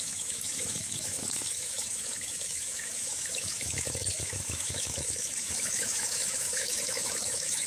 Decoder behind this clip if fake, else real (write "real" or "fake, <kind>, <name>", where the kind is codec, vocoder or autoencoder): fake, autoencoder, DAC-VAE